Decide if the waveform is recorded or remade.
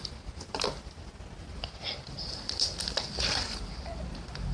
recorded